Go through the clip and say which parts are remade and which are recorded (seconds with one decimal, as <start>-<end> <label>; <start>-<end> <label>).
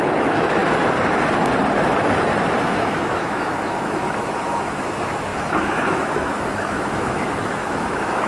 0.0-0.6 remade; 0.6-2.6 recorded; 2.6-8.3 remade